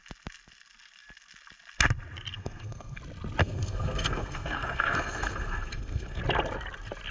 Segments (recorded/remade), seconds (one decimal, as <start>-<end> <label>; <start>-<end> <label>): 0.0-2.3 recorded; 2.3-3.0 remade; 3.0-3.4 recorded; 3.4-6.2 remade; 6.2-7.1 recorded